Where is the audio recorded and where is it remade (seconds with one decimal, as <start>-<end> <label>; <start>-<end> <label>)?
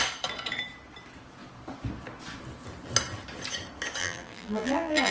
0.0-4.0 recorded; 4.0-5.1 remade